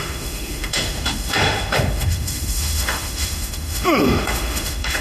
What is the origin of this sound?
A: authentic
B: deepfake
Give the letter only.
B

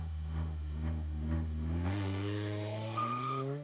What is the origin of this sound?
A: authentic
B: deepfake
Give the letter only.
B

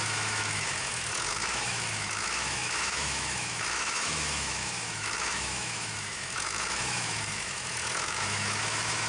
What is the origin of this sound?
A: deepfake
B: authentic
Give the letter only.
A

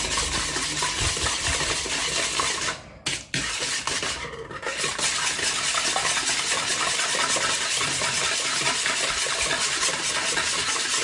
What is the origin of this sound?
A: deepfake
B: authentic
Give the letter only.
B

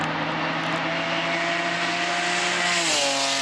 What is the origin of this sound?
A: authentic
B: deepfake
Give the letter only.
A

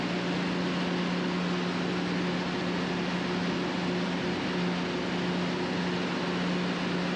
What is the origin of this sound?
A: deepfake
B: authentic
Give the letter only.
B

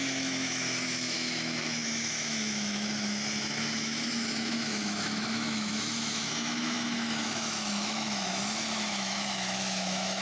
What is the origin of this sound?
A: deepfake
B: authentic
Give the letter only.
A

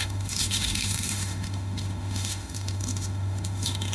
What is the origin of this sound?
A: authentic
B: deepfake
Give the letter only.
B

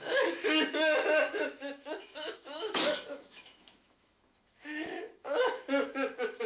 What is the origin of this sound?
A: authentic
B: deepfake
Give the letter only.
B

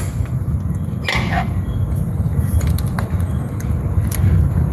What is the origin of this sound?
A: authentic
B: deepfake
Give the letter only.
A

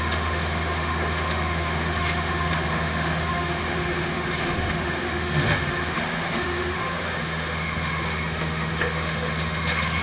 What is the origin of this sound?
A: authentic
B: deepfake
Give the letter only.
B